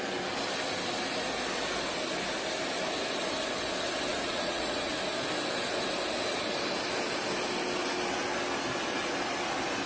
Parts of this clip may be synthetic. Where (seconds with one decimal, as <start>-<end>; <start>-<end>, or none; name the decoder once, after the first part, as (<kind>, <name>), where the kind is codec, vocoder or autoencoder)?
4.1-4.9 (vocoder, Vocos)